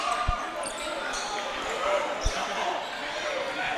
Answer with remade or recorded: remade